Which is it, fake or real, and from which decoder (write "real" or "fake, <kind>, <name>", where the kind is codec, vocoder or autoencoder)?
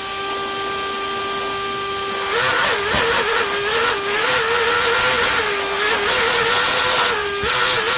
real